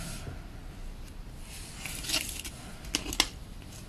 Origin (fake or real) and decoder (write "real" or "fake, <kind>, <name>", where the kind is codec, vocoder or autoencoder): real